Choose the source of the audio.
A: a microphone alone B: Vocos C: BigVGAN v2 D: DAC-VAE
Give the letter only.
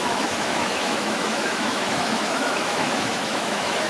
D